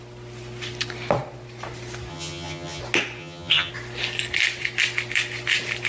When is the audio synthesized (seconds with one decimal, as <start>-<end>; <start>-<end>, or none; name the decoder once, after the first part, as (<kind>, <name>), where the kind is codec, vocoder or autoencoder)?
2.1-2.8 (vocoder, HiFi-GAN); 3.2-3.7